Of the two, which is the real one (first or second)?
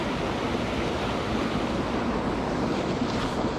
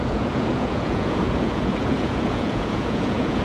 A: first